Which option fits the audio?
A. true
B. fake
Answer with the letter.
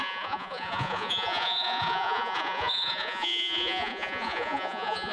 B